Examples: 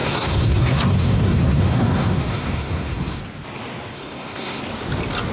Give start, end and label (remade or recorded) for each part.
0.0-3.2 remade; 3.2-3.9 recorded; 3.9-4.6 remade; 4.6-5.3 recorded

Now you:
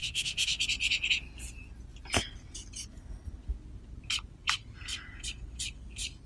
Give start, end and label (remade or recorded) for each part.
0.0-0.6 remade; 0.6-6.3 recorded

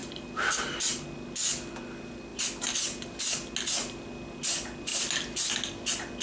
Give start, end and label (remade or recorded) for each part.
0.0-6.2 recorded

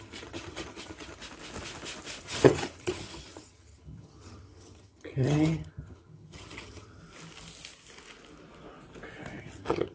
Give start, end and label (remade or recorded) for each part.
0.0-1.2 remade; 1.2-2.2 recorded; 2.2-7.0 remade; 7.0-9.4 recorded; 9.4-9.9 remade

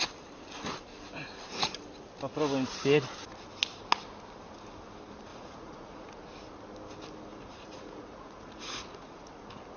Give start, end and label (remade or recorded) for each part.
0.0-5.3 recorded; 5.3-6.1 remade; 6.1-7.3 recorded; 7.3-9.3 remade; 9.3-9.8 recorded